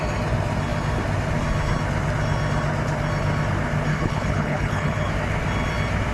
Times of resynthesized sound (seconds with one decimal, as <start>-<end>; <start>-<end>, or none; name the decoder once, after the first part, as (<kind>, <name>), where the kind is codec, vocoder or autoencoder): 3.9-5.1 (codec, HILCodec)